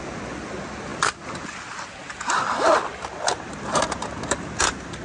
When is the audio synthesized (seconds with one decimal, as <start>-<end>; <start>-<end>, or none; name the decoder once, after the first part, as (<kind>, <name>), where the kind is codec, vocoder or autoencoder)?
none